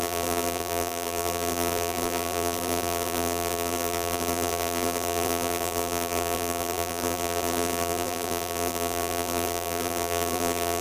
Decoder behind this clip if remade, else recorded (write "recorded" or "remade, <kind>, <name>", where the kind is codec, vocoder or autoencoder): remade, vocoder, BigVGAN v2